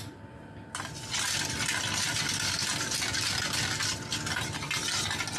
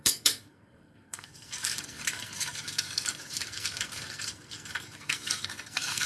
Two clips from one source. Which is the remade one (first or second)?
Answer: second